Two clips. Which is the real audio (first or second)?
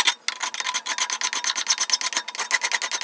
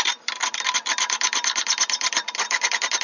first